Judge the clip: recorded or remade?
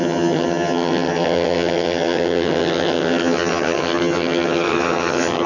remade